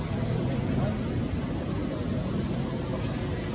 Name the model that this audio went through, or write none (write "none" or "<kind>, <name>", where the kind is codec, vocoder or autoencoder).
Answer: none